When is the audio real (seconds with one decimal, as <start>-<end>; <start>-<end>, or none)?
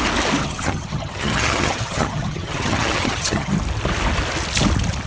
0.0-0.4; 3.5-5.1